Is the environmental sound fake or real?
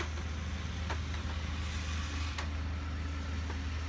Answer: real